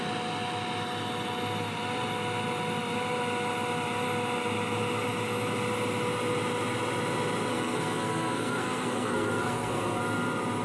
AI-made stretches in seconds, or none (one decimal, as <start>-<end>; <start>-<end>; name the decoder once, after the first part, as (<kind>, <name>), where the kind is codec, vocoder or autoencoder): 7.5-10.0 (codec, SNAC)